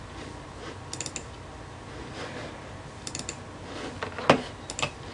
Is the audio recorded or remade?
recorded